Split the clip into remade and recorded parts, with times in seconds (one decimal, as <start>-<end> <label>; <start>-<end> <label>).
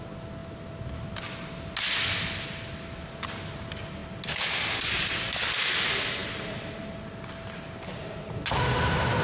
0.0-9.2 recorded